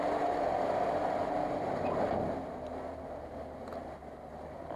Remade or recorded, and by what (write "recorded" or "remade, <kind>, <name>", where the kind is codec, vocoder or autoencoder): recorded